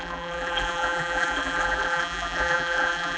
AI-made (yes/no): yes